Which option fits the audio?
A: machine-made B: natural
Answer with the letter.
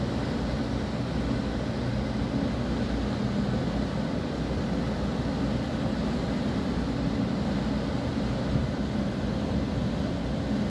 B